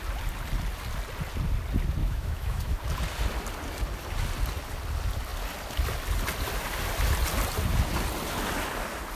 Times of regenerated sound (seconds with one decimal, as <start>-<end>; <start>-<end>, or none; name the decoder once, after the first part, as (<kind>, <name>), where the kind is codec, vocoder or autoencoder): 2.0-2.8 (autoencoder, DAC-VAE)